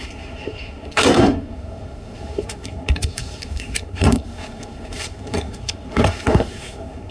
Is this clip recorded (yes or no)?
no